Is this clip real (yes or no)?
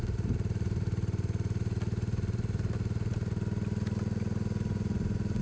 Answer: yes